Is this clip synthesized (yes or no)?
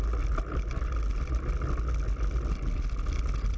no